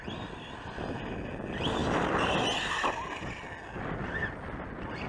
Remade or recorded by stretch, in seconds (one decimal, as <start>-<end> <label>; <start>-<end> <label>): 0.0-5.1 recorded